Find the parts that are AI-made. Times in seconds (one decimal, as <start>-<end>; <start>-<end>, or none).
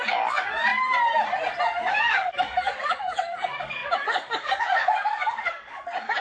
0.0-0.7; 1.9-6.2